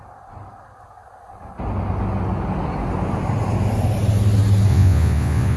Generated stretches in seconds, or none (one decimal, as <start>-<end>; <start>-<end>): 4.7-5.6